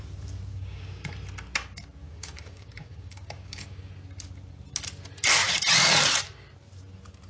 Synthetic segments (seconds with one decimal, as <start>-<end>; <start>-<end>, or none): 0.5-1.1; 2.0-3.9